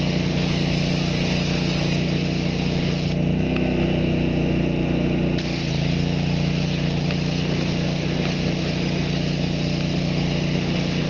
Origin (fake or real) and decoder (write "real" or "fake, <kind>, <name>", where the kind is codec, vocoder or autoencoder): real